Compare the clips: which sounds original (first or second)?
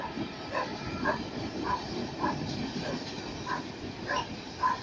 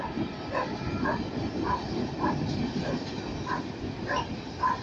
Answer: second